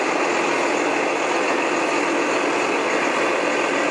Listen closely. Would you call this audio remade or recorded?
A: recorded